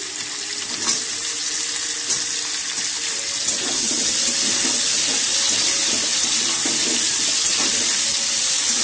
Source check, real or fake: real